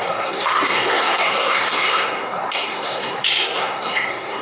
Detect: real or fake fake